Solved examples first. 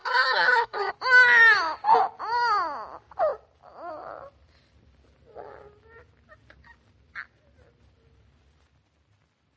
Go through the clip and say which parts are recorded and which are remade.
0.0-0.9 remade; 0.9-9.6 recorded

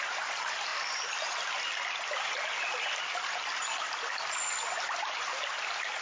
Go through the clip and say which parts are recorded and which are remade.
0.0-6.0 recorded

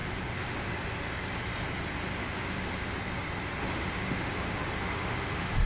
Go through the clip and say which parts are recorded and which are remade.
0.0-0.7 remade; 0.7-2.2 recorded; 2.2-2.9 remade; 2.9-3.6 recorded; 3.6-5.7 remade

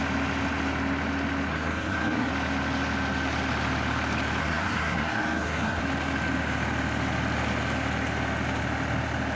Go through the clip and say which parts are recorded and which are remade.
0.0-1.5 recorded; 1.5-2.3 remade; 2.3-4.4 recorded; 4.4-5.8 remade; 5.8-9.4 recorded

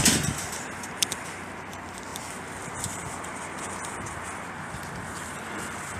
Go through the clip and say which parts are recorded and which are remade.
0.0-6.0 remade

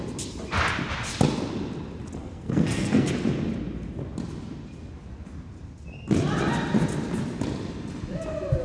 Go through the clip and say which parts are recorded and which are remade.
0.0-2.2 recorded; 2.2-3.1 remade; 3.1-8.6 recorded

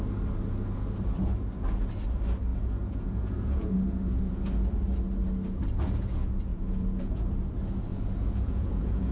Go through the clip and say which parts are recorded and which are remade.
0.0-2.5 recorded; 2.5-4.2 remade; 4.2-6.5 recorded; 6.5-7.3 remade; 7.3-7.9 recorded; 7.9-9.1 remade